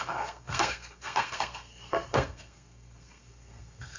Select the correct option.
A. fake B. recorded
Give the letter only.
A